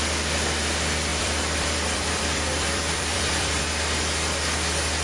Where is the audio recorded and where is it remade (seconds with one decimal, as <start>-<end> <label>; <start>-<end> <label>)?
0.0-1.1 recorded; 1.1-3.6 remade; 3.6-5.0 recorded